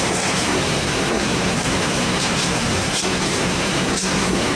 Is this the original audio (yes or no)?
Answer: no